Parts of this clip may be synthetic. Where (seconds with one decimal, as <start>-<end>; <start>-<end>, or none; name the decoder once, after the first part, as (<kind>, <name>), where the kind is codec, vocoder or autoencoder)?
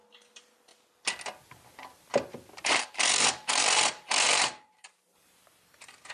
0.0-0.7 (vocoder, BigVGAN v2); 2.8-6.1